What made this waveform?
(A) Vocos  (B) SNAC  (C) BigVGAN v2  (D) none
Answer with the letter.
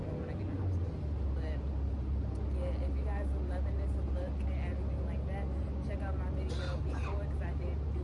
D